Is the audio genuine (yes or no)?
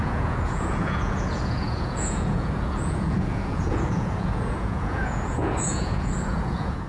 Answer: no